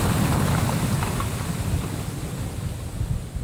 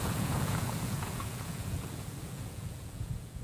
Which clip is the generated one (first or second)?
second